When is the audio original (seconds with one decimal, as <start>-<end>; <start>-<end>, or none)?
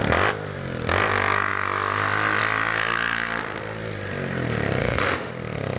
0.0-4.8; 5.3-5.8